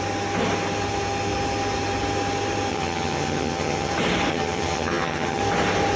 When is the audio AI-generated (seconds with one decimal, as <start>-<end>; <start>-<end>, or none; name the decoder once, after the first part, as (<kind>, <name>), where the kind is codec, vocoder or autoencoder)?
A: 2.7-3.9 (vocoder, HiFi-GAN); 4.3-5.4